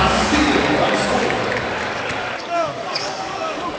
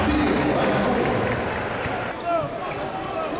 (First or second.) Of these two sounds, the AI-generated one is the first